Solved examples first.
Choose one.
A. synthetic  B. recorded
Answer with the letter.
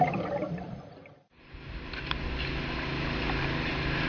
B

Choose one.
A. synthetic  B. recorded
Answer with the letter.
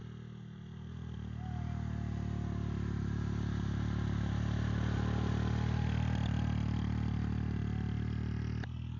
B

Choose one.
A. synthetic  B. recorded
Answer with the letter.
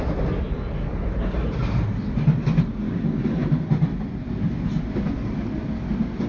B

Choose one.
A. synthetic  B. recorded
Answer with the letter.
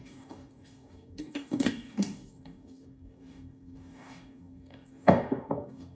A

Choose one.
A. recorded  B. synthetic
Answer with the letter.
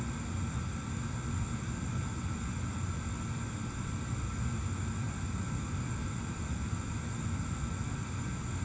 A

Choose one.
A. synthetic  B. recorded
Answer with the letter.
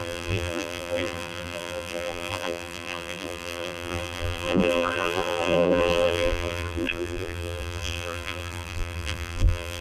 A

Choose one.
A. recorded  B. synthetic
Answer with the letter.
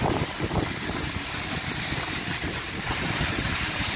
B